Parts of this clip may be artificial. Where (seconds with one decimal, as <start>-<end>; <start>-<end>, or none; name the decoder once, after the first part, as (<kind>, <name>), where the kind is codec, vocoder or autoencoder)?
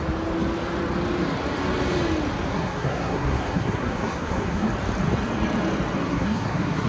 2.5-4.7 (codec, SNAC); 6.0-6.9